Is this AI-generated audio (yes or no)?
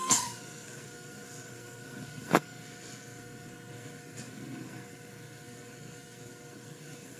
yes